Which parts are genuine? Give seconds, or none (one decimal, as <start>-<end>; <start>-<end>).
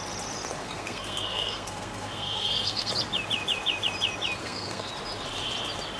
0.0-0.6; 2.9-4.4; 4.9-6.0